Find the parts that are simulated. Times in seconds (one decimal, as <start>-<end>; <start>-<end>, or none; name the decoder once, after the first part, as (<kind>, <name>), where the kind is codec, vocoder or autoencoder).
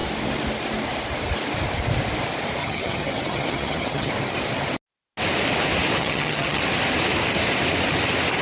2.6-4.1 (vocoder, HiFi-GAN); 6.0-6.6